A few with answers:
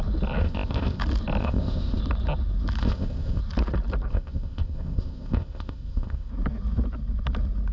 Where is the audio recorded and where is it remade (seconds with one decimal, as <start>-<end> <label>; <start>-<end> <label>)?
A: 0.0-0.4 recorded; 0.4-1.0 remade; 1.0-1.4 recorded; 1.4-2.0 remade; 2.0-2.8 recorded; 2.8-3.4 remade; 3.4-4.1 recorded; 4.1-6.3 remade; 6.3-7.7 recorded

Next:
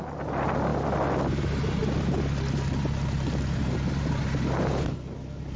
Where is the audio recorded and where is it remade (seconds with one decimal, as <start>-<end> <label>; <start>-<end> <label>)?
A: 0.0-5.6 recorded

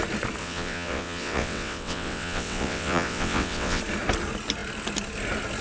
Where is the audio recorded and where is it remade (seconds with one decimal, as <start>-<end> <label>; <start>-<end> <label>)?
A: 0.0-0.4 recorded; 0.4-3.8 remade; 3.8-5.6 recorded